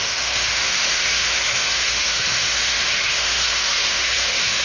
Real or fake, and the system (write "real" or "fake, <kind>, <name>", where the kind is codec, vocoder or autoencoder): fake, autoencoder, DAC-VAE